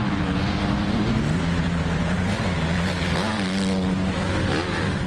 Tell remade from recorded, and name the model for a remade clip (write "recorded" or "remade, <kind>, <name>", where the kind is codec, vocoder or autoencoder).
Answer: recorded